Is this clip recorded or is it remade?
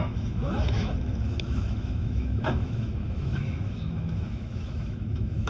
remade